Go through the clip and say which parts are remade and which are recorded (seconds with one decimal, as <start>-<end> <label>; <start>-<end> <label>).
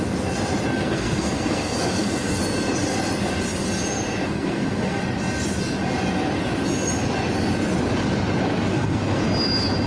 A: 0.0-0.7 recorded; 0.7-2.4 remade; 2.4-4.2 recorded; 4.2-5.0 remade; 5.0-8.7 recorded; 8.7-9.2 remade; 9.2-9.9 recorded